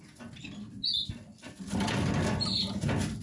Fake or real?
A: real